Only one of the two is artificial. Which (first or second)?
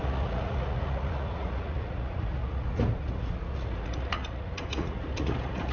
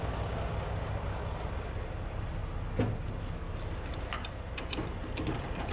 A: first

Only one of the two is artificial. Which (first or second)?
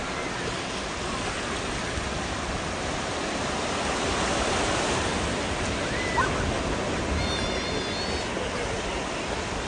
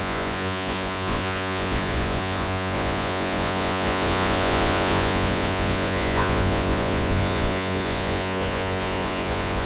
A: second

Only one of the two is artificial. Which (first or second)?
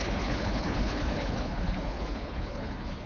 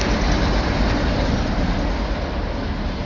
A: first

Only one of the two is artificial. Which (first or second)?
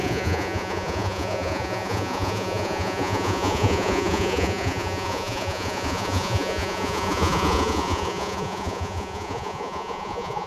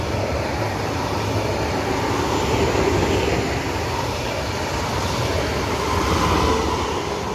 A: first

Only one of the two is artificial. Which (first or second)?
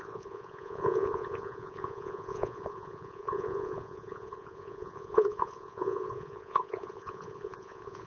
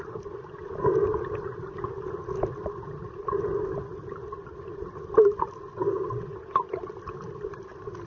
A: first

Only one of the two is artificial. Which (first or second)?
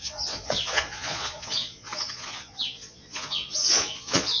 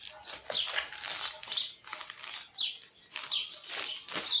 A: first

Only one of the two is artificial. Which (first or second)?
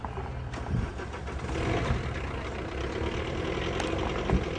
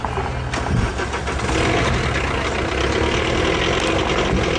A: first